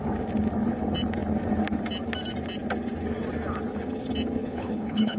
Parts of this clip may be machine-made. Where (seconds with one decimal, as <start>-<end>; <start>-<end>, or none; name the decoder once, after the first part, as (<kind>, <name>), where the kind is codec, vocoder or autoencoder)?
4.4-5.2 (codec, HILCodec)